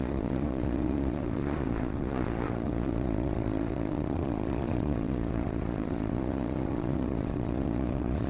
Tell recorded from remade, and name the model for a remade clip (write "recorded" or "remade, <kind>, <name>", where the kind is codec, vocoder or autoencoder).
remade, vocoder, Vocos